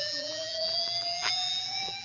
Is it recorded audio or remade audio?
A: remade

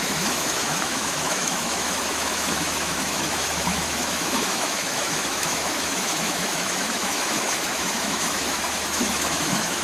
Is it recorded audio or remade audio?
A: remade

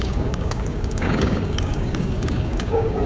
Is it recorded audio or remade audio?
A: remade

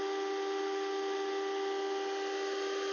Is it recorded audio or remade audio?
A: recorded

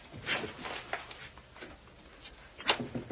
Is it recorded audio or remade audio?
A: recorded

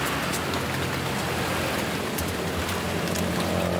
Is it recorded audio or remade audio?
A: recorded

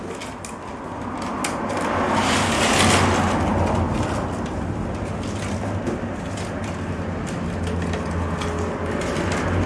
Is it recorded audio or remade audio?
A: recorded